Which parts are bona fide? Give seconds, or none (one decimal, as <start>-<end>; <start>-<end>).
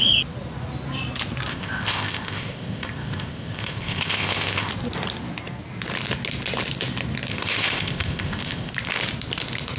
0.0-1.5; 4.7-7.3; 8.7-9.8